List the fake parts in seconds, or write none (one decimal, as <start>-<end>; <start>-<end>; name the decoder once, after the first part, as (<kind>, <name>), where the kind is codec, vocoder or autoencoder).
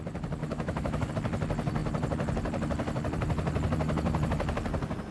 0.4-1.1 (autoencoder, DAC-VAE)